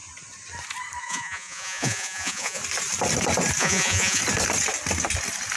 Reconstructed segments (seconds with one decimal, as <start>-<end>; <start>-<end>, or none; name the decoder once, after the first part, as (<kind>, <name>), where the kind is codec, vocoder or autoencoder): 1.0-2.6 (vocoder, Vocos); 3.6-4.2